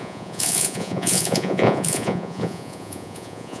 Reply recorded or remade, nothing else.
remade